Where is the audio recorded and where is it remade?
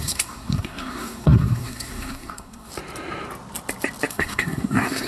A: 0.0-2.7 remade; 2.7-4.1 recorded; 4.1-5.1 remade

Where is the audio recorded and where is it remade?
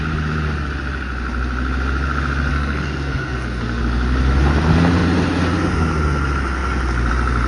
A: 0.0-2.5 recorded; 2.5-3.8 remade; 3.8-7.5 recorded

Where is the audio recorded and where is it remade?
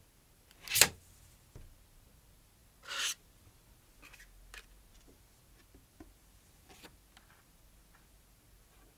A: 0.0-9.0 recorded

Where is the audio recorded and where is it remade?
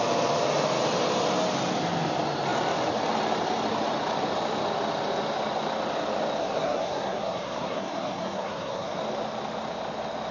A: 0.0-6.4 recorded; 6.4-9.0 remade; 9.0-10.3 recorded